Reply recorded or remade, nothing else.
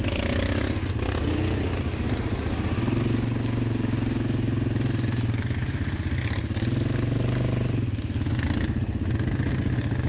recorded